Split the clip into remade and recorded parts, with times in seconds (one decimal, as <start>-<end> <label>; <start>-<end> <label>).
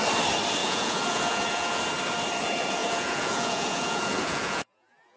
0.0-0.6 recorded; 0.6-1.8 remade; 1.8-2.8 recorded; 2.8-5.2 remade